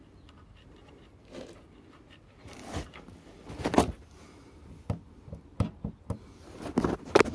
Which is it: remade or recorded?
recorded